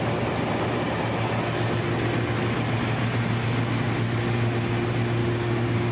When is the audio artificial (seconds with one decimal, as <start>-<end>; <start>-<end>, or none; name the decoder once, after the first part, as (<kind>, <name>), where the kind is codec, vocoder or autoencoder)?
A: 5.2-5.9 (codec, DAC)